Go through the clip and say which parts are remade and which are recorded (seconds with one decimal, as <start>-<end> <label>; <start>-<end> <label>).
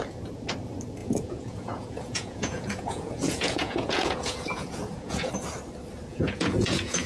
0.0-1.0 recorded; 1.0-5.3 remade; 5.3-6.1 recorded; 6.1-7.1 remade